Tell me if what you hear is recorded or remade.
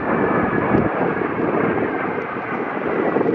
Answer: recorded